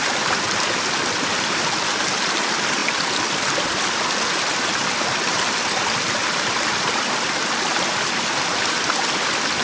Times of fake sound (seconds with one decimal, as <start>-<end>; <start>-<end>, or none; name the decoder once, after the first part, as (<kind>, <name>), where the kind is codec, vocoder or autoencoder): none